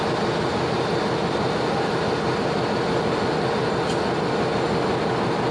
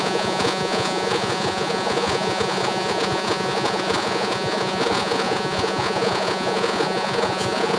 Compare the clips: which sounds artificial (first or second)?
second